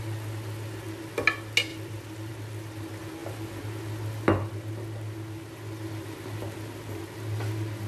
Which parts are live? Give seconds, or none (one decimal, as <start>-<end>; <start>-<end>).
0.0-1.7; 2.3-7.9